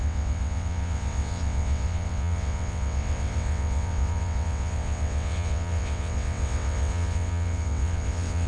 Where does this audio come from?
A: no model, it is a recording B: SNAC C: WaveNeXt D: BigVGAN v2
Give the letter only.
C